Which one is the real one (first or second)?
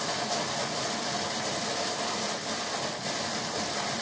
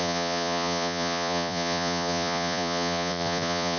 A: first